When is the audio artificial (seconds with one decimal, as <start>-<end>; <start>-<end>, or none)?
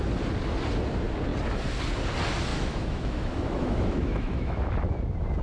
2.5-4.7